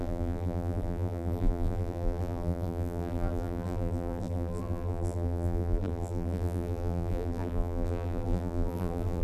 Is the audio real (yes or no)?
no